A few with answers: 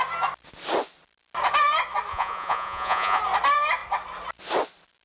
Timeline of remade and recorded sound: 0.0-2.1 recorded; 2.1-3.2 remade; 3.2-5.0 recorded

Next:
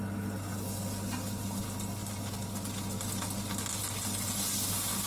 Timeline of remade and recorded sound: 0.0-5.1 recorded

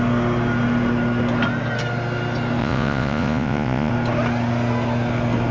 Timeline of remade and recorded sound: 0.0-2.6 recorded; 2.6-3.9 remade; 3.9-5.5 recorded

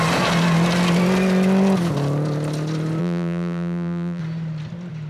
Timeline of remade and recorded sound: 0.0-3.0 recorded; 3.0-4.2 remade; 4.2-5.1 recorded

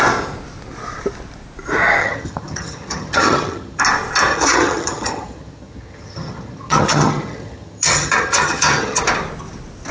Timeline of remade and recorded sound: 0.0-2.0 recorded; 2.0-3.8 remade; 3.8-4.3 recorded; 4.3-9.0 remade; 9.0-9.9 recorded

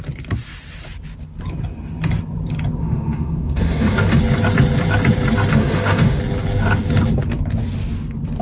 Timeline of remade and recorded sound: 0.0-2.8 recorded; 2.8-4.2 remade; 4.2-5.5 recorded; 5.5-6.2 remade; 6.2-8.4 recorded

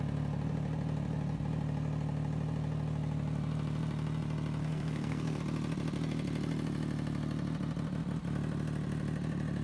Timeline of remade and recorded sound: 0.0-4.6 recorded; 4.6-5.4 remade; 5.4-9.6 recorded

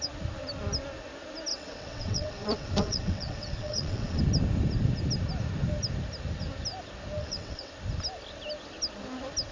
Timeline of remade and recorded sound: 0.0-1.5 recorded; 1.5-4.2 remade; 4.2-7.2 recorded; 7.2-7.7 remade; 7.7-9.5 recorded